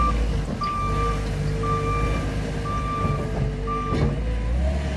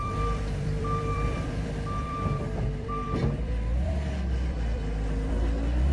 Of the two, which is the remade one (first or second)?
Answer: second